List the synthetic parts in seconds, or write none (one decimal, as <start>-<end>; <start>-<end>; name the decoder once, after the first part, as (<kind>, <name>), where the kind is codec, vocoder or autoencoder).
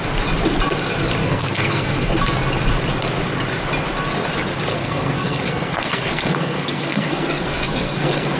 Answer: 1.2-2.2 (codec, SNAC); 4.7-8.4